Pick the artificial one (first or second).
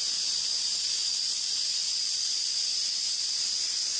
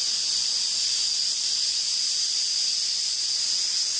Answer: first